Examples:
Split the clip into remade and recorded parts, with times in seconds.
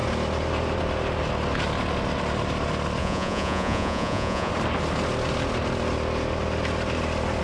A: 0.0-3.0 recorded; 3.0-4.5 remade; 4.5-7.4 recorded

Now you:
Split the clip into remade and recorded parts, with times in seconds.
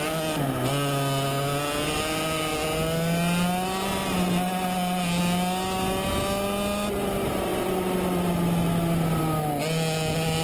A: 0.0-10.4 recorded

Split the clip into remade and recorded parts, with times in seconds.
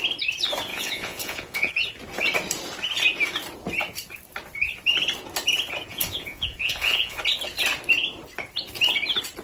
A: 0.0-0.7 recorded; 0.7-1.7 remade; 1.7-5.9 recorded; 5.9-7.2 remade; 7.2-9.4 recorded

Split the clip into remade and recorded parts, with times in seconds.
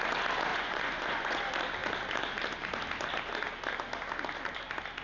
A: 0.0-0.5 recorded; 0.5-1.4 remade; 1.4-5.0 recorded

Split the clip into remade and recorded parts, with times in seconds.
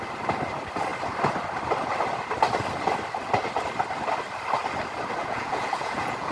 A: 0.0-5.2 recorded; 5.2-6.3 remade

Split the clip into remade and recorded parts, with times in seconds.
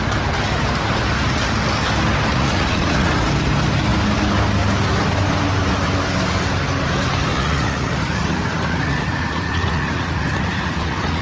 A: 0.0-2.3 recorded; 2.3-3.1 remade; 3.1-7.3 recorded; 7.3-11.2 remade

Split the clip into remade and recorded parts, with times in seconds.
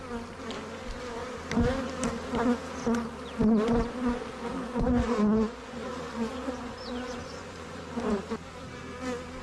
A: 0.0-4.5 recorded; 4.5-7.9 remade; 7.9-9.4 recorded